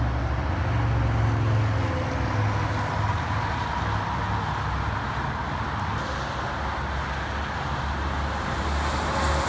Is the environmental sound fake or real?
real